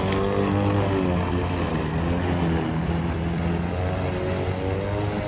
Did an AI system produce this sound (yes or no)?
no